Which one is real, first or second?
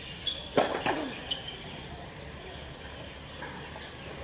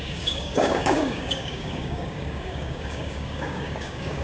first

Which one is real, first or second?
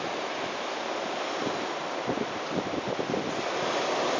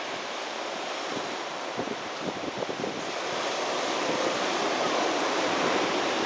first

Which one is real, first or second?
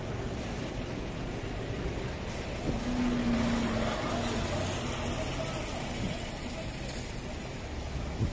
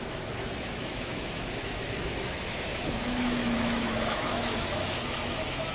first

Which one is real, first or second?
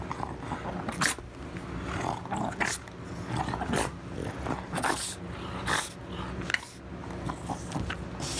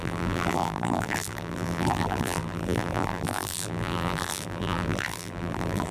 first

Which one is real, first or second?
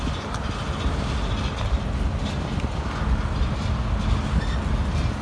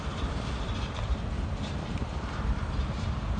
first